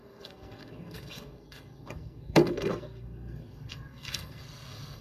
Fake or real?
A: fake